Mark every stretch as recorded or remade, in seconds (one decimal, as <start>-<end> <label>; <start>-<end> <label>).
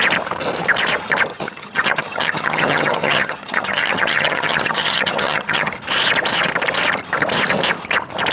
0.0-1.3 recorded; 1.3-5.7 remade; 5.7-8.3 recorded